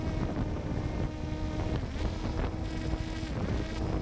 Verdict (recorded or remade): recorded